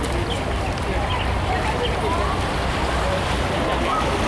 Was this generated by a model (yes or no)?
no